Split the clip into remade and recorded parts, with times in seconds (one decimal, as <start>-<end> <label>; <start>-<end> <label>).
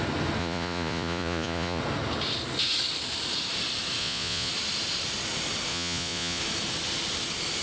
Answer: 0.0-0.4 recorded; 0.4-1.8 remade; 1.8-4.0 recorded; 4.0-4.5 remade; 4.5-5.7 recorded; 5.7-6.4 remade; 6.4-7.6 recorded